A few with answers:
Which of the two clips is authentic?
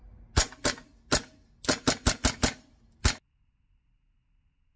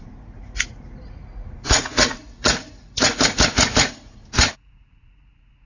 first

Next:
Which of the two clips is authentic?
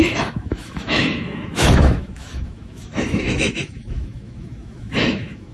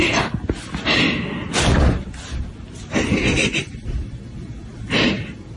second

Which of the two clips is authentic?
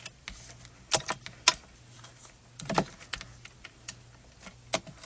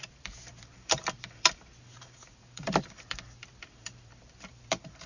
first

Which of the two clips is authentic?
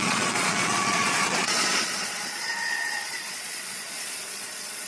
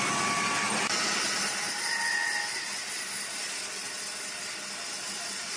second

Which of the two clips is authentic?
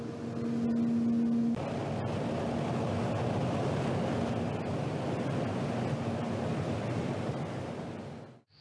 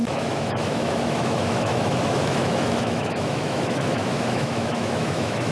first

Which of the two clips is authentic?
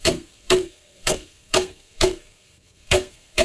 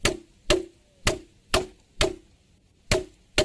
second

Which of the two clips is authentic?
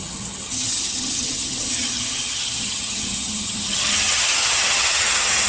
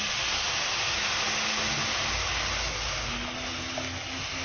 second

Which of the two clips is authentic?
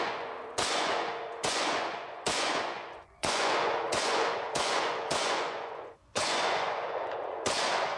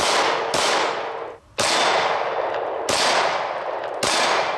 second